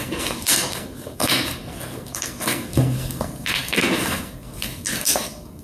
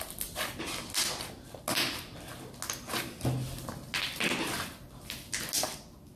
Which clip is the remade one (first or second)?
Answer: first